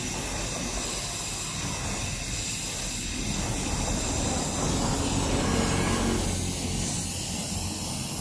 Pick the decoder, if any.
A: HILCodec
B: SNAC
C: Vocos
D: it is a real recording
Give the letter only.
D